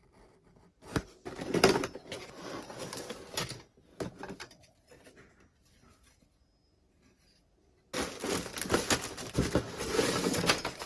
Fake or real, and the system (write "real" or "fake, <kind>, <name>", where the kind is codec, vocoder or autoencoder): real